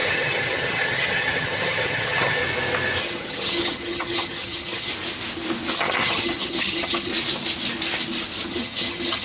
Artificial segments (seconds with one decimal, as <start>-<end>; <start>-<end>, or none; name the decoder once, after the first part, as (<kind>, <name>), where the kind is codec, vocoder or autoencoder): 0.0-2.4 (vocoder, HiFi-GAN); 3.0-4.9; 5.8-7.1; 8.5-9.2